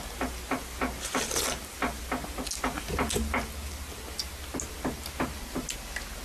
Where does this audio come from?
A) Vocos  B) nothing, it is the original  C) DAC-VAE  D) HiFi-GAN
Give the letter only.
B